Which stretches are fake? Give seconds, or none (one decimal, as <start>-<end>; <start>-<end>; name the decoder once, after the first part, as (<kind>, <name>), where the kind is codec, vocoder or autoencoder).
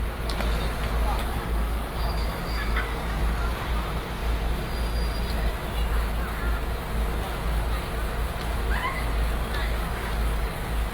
1.2-3.2 (codec, DAC); 9.6-10.9